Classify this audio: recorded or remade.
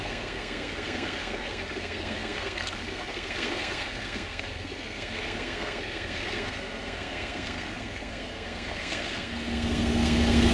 remade